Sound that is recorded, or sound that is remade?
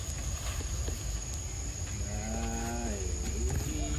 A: recorded